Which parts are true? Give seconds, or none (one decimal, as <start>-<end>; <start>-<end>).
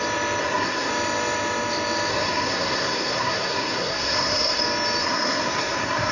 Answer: 0.0-0.4; 0.9-2.1; 4.6-5.0